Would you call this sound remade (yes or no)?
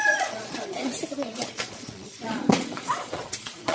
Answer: yes